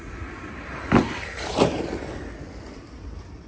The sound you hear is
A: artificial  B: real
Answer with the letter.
B